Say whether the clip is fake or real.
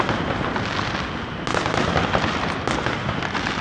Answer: real